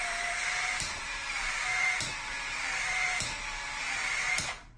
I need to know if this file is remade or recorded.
remade